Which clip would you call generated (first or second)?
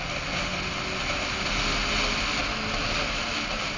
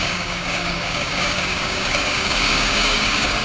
second